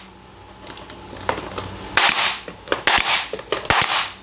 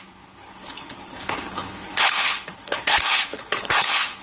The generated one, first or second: second